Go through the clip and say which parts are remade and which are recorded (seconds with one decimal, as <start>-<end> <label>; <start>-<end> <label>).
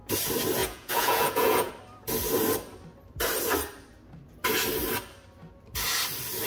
0.0-0.6 recorded; 0.6-1.7 remade; 1.7-6.5 recorded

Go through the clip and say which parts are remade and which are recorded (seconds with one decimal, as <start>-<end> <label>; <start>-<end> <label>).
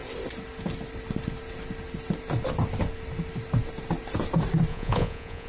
0.0-4.7 recorded; 4.7-5.5 remade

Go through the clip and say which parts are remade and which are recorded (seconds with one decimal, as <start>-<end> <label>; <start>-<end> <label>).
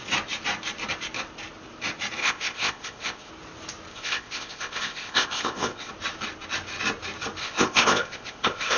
0.0-2.2 recorded; 2.2-3.3 remade; 3.3-3.9 recorded; 3.9-5.9 remade; 5.9-7.4 recorded; 7.4-8.8 remade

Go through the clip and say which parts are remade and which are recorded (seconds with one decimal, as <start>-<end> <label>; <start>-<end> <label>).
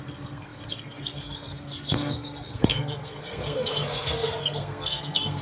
0.0-5.4 remade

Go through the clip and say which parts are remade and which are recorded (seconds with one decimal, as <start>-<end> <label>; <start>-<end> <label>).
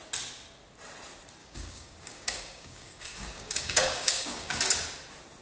0.0-1.4 recorded; 1.4-4.6 remade; 4.6-5.4 recorded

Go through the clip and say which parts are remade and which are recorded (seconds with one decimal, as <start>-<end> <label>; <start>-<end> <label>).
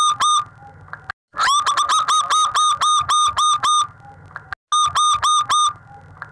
0.0-6.3 recorded